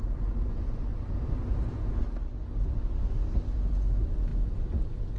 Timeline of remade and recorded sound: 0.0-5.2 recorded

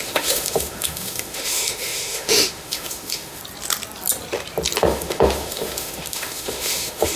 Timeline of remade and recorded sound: 0.0-3.4 remade; 3.4-4.8 recorded; 4.8-7.2 remade

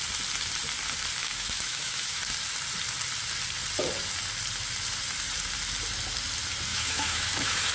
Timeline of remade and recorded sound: 0.0-1.2 recorded; 1.2-2.2 remade; 2.2-6.7 recorded; 6.7-7.7 remade

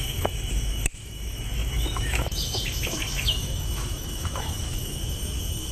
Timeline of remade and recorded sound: 0.0-5.7 remade

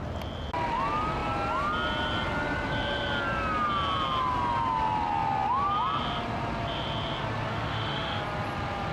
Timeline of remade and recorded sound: 0.0-7.5 recorded; 7.5-8.2 remade; 8.2-8.9 recorded

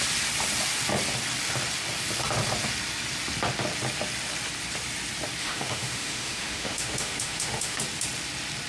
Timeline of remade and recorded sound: 0.0-5.4 recorded; 5.4-7.8 remade; 7.8-8.7 recorded